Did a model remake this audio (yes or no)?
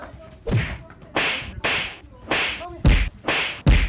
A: no